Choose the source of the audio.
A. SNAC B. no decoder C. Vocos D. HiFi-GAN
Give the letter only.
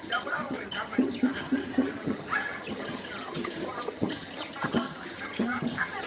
D